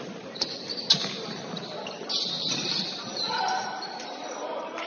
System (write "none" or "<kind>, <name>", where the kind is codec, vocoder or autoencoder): vocoder, BigVGAN v2